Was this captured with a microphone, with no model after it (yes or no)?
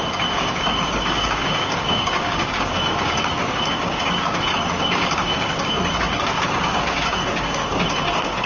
no